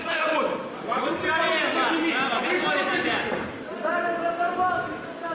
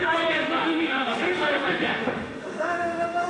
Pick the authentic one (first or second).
first